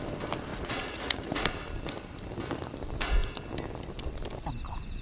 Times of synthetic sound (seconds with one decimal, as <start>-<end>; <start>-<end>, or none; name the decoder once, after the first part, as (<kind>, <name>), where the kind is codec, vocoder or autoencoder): 0.5-1.5 (vocoder, Vocos)